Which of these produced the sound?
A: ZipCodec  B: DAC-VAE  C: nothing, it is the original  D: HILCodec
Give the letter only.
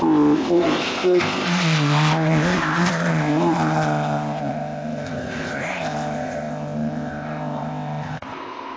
A